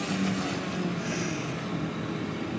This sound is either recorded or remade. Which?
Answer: recorded